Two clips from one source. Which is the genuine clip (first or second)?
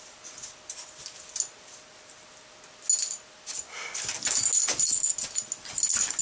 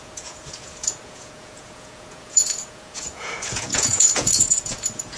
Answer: first